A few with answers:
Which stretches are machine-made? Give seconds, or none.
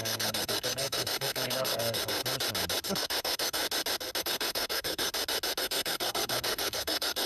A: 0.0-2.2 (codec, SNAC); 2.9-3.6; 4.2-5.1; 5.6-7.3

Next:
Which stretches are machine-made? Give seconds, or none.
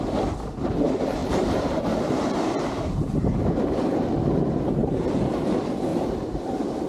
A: 1.2-3.8 (vocoder, BigVGAN v2); 4.8-5.5; 5.9-6.9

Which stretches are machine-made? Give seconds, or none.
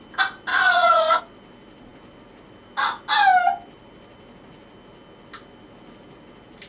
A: 0.5-1.2 (vocoder, Vocos)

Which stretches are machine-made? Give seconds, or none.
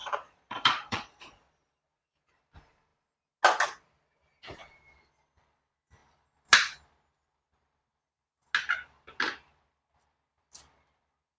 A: 0.0-1.5 (vocoder, Vocos)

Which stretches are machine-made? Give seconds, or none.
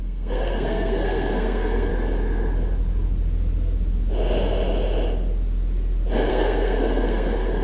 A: 0.0-1.9 (codec, SNAC); 6.3-7.6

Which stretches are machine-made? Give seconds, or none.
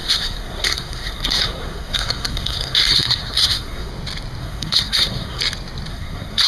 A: 0.0-3.9 (codec, SNAC); 4.4-5.4; 5.9-6.5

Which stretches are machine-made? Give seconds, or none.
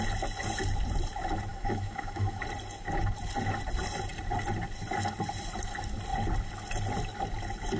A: 1.5-2.4 (autoencoder, DAC-VAE)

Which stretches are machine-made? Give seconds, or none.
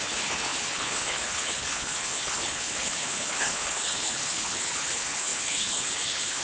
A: 0.0-6.4 (codec, HILCodec)